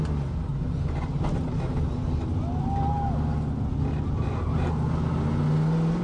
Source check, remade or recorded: recorded